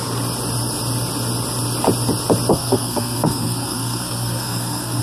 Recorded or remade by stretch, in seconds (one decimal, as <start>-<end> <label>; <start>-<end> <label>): 0.0-2.5 recorded; 2.5-5.0 remade